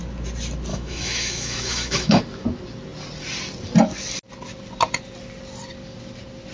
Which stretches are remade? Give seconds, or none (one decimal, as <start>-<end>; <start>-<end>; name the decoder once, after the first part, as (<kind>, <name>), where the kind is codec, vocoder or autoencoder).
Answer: 0.7-2.2 (autoencoder, DAC-VAE)